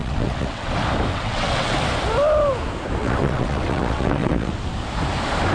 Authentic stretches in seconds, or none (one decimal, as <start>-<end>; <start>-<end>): 0.7-1.1; 1.8-3.0; 4.5-5.5

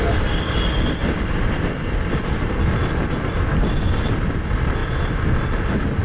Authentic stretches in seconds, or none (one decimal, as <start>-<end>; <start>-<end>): 0.0-1.0; 2.6-4.8; 5.3-6.0

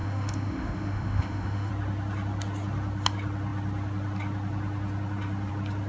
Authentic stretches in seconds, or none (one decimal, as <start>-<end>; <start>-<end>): 1.7-5.9

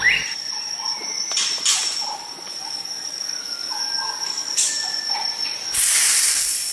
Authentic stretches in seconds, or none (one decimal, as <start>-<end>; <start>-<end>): 0.0-2.5; 4.7-6.7

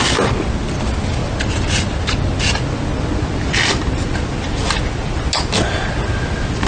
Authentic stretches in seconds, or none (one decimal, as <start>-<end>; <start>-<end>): 0.0-6.7

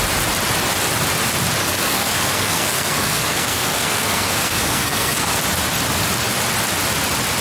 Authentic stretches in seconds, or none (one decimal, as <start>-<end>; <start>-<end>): 0.0-1.6; 5.4-7.4

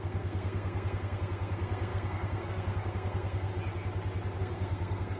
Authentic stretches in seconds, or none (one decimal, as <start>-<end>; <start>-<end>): 3.5-4.4